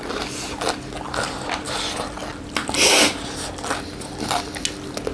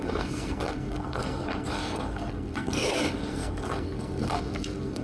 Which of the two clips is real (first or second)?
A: first